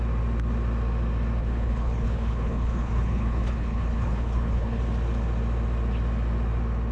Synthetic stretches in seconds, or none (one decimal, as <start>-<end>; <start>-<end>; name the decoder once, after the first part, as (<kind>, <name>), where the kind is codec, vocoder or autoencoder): 1.4-4.8 (codec, HILCodec)

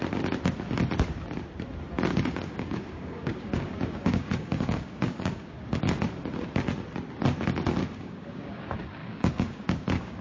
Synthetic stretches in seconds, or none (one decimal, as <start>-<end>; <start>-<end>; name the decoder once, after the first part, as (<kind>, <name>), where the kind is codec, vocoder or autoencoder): 2.1-5.8 (codec, DAC); 7.8-8.6; 9.0-10.2

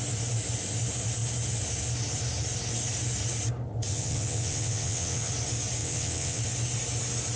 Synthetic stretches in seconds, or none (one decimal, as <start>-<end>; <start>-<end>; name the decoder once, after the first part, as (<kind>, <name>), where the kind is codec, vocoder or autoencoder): 3.9-5.3 (vocoder, WaveNeXt); 5.8-6.4

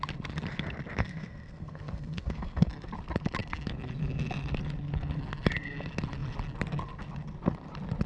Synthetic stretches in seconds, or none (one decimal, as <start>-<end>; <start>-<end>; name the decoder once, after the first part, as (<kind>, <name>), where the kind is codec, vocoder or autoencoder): 1.0-2.7 (codec, SNAC)